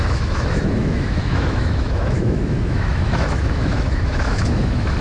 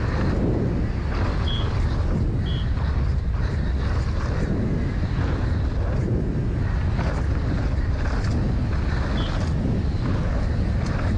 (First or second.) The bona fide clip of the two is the second